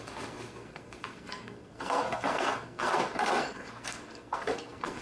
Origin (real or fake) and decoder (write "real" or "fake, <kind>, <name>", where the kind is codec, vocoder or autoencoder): fake, codec, SNAC